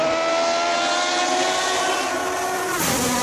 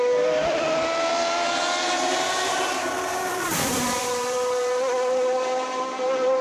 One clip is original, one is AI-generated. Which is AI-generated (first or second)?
second